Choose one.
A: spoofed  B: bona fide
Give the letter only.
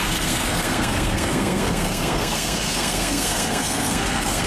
A